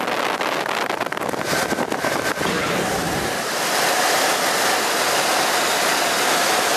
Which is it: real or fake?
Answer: real